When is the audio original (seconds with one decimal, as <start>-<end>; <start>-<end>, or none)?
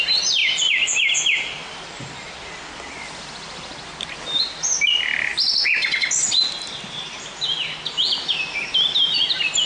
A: 0.4-1.1; 3.7-4.2; 5.3-8.9